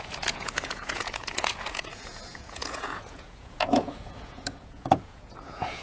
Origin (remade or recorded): remade